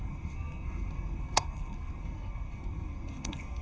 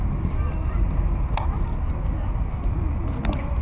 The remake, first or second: first